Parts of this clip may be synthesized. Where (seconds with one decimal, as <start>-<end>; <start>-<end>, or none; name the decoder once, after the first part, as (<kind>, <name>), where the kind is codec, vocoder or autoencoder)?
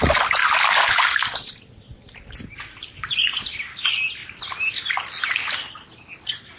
none